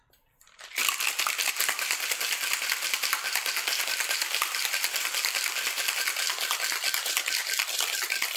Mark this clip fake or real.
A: fake